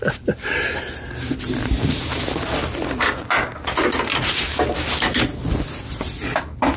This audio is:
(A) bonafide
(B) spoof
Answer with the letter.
A